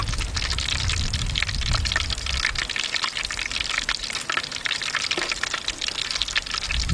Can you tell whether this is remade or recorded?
recorded